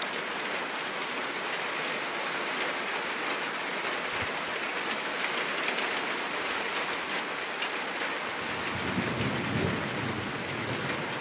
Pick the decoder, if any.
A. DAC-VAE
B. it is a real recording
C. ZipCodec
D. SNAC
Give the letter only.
B